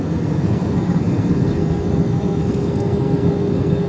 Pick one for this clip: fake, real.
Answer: fake